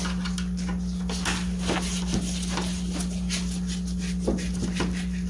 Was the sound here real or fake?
real